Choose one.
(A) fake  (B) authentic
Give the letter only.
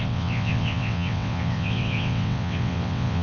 A